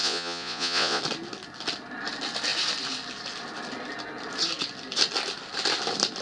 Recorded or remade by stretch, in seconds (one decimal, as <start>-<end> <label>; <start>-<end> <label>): 0.0-1.0 remade; 1.0-6.2 recorded